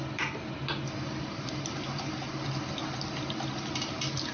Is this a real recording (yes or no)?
yes